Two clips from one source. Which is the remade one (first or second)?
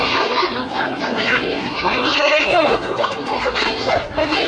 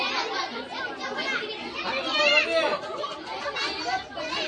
first